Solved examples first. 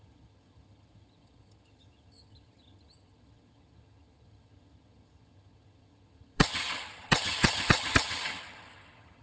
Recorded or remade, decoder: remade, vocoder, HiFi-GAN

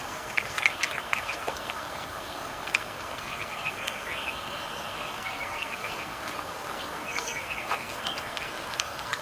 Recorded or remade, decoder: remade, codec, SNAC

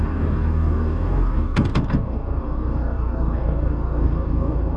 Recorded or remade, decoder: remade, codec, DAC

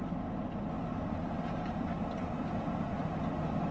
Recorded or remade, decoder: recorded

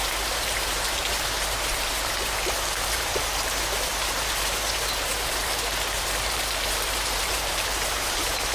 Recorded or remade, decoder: remade, vocoder, BigVGAN v2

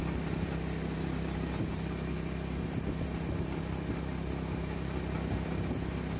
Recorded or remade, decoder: recorded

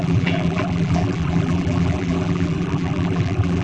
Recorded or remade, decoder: remade, vocoder, BigVGAN v2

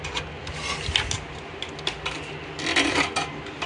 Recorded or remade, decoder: recorded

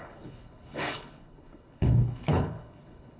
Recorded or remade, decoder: remade, codec, HILCodec